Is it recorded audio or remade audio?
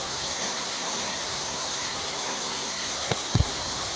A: remade